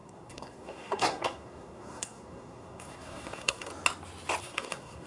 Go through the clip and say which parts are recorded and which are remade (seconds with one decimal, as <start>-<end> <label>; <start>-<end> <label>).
0.0-3.7 remade; 3.7-4.4 recorded; 4.4-5.1 remade